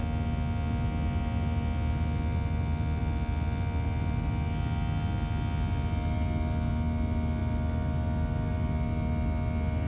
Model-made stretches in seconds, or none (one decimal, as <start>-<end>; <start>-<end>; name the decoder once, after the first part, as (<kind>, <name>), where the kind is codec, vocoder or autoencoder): none